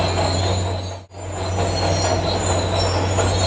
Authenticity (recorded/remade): recorded